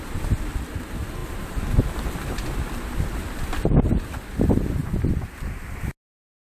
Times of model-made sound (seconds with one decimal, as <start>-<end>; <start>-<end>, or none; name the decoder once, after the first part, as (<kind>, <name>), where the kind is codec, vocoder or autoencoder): none